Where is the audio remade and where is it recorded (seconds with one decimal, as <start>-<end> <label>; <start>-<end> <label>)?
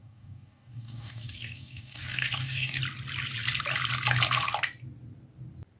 0.0-2.8 remade; 2.8-5.8 recorded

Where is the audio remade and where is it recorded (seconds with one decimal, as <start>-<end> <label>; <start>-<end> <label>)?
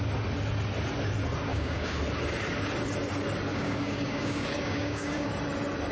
0.0-1.5 recorded; 1.5-2.0 remade; 2.0-3.5 recorded; 3.5-5.3 remade; 5.3-5.9 recorded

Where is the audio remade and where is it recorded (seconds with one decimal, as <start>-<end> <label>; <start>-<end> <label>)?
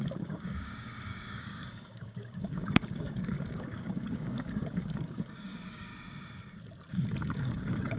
0.0-5.9 remade; 5.9-6.9 recorded; 6.9-8.0 remade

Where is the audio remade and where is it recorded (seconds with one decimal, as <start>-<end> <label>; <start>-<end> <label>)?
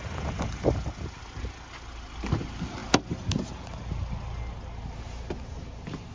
0.0-6.1 recorded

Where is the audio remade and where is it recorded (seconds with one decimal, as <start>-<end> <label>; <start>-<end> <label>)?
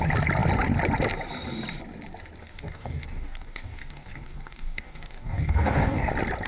0.0-2.4 recorded; 2.4-6.1 remade; 6.1-6.5 recorded